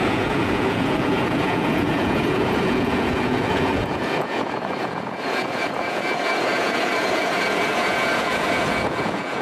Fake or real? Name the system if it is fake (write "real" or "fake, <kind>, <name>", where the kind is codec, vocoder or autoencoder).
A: fake, vocoder, Vocos